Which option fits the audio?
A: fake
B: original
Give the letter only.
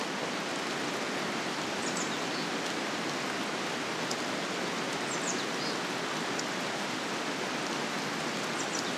B